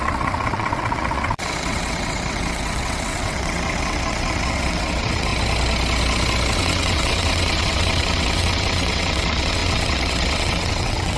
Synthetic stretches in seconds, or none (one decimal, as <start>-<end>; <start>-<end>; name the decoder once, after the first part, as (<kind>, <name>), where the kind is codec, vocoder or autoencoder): 0.0-5.3 (vocoder, WaveNeXt); 6.5-11.2